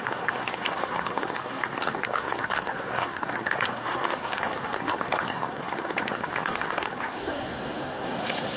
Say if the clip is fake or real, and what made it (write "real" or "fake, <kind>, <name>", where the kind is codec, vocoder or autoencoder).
fake, codec, SNAC